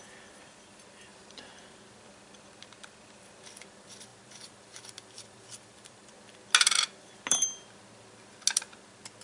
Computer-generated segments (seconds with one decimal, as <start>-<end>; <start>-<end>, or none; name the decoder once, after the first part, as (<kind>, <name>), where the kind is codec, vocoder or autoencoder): 1.1-1.8 (vocoder, BigVGAN v2); 4.1-6.1